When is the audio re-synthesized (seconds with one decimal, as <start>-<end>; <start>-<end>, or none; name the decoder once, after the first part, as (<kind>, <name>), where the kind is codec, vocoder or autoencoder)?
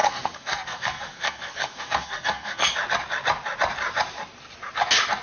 0.0-2.7 (codec, SNAC)